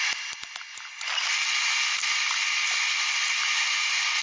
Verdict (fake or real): real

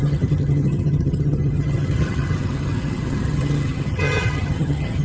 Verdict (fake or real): fake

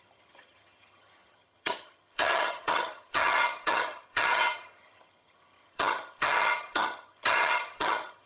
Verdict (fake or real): fake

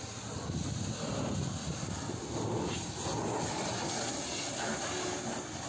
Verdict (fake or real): real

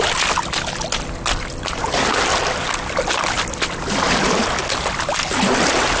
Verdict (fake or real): real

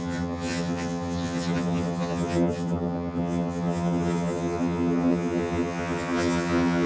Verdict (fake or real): fake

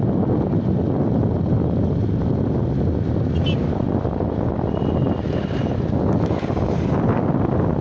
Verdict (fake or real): real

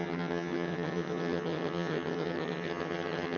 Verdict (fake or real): fake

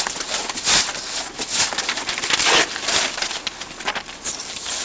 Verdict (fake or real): real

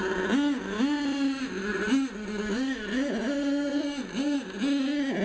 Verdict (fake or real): real